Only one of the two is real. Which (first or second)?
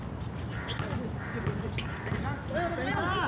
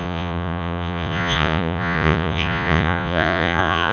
first